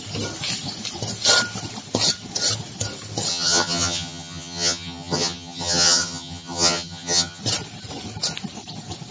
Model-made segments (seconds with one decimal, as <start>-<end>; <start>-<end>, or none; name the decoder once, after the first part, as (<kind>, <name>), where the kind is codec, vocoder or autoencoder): 3.3-7.4 (vocoder, HiFi-GAN)